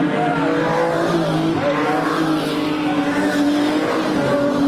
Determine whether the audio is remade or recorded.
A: recorded